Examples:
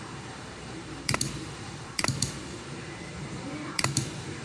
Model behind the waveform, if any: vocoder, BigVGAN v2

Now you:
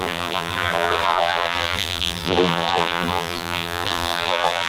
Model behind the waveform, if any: vocoder, BigVGAN v2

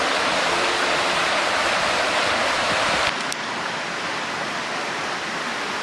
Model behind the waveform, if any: vocoder, BigVGAN v2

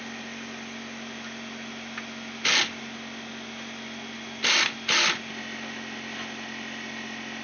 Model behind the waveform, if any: none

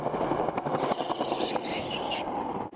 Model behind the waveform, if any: vocoder, BigVGAN v2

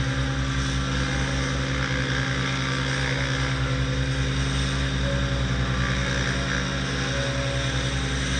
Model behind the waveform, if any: none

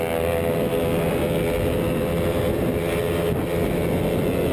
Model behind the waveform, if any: none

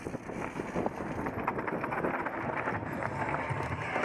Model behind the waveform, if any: none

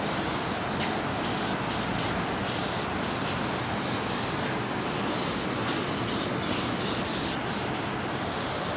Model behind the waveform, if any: none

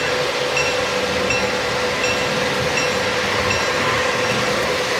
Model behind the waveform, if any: none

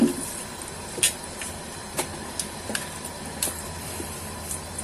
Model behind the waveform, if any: vocoder, BigVGAN v2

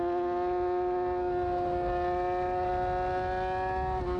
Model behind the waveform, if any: none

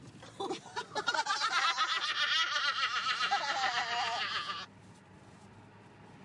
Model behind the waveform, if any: none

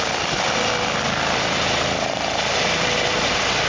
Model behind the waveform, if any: none